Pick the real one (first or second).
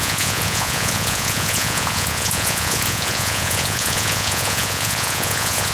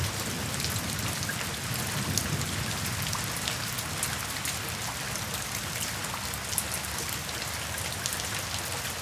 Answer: second